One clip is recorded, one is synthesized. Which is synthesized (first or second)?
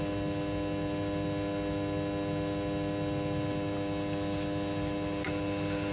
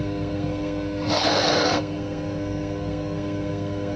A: second